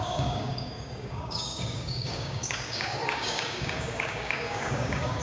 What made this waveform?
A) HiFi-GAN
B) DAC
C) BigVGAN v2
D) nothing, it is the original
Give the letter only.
B